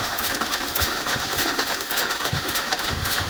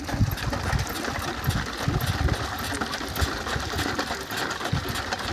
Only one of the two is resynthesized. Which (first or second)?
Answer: first